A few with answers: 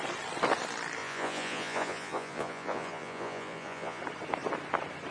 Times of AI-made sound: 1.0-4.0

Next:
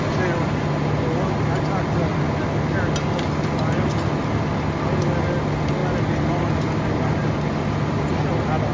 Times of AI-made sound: none

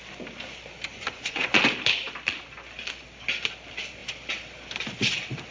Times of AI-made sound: 0.9-1.6

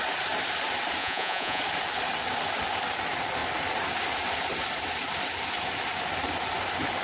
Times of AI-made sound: 1.0-1.6

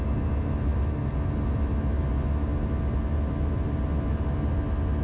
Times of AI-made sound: none

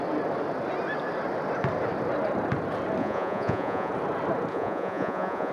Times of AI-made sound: 3.0-3.9; 4.5-5.5